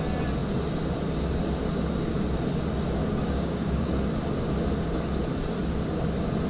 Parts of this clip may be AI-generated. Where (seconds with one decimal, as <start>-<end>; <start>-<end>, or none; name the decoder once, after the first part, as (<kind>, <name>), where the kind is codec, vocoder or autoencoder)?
3.0-3.9 (codec, DAC)